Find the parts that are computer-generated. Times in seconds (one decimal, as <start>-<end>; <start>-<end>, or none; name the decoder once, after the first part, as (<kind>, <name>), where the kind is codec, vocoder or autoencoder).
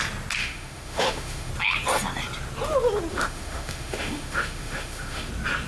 0.4-1.5 (autoencoder, DAC-VAE); 3.1-5.3